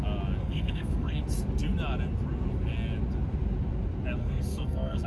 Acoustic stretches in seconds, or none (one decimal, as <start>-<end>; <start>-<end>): 0.0-0.4; 1.2-4.2